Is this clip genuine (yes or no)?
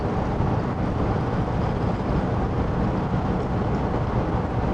yes